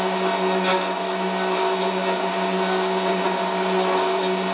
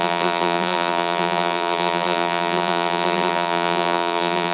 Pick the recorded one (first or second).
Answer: first